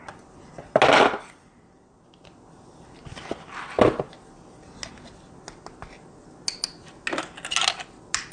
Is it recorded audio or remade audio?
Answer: recorded